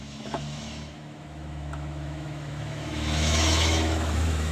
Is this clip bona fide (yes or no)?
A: no